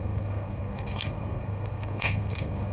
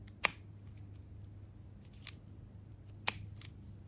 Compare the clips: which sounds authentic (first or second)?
second